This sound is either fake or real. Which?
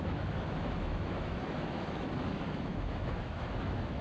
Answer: fake